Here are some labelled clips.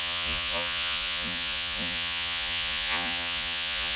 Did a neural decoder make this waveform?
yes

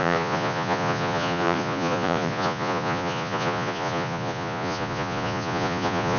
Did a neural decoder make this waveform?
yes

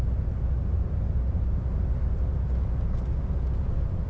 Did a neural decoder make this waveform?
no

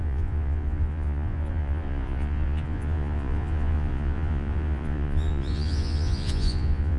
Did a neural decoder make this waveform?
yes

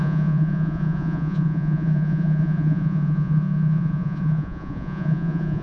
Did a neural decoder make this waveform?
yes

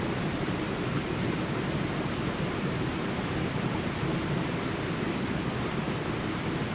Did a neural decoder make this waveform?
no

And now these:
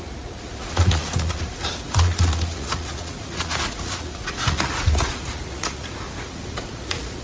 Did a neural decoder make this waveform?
yes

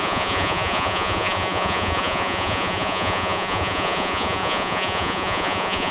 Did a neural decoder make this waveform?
yes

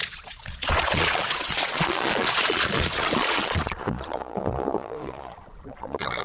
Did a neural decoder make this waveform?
yes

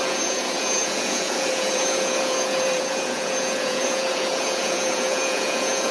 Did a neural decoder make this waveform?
yes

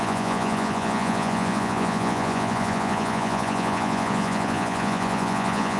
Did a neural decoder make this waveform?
yes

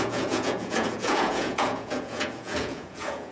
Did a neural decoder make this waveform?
yes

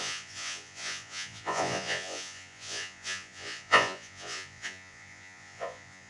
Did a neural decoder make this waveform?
yes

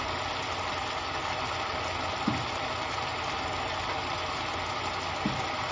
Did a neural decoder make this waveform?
no